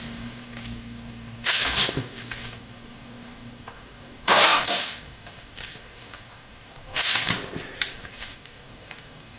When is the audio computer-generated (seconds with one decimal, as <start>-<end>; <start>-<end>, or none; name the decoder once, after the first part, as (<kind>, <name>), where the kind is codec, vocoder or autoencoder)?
0.0-7.3 (codec, DAC); 7.9-9.4